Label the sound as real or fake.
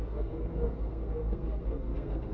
fake